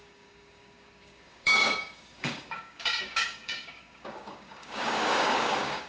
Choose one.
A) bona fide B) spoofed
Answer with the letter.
B